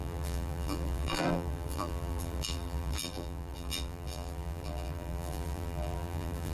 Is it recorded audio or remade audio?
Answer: remade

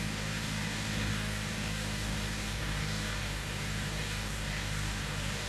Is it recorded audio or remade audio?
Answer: remade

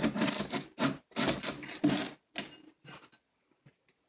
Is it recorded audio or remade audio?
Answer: recorded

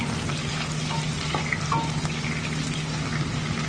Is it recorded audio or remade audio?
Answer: recorded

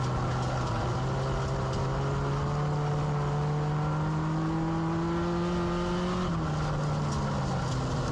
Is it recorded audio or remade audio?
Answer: recorded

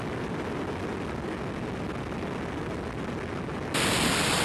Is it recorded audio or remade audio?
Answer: recorded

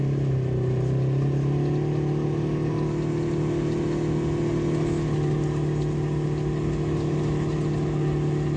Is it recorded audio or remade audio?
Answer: recorded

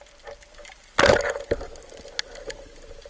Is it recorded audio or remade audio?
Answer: recorded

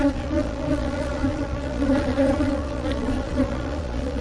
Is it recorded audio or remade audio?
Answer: remade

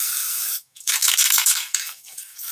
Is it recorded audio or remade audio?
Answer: remade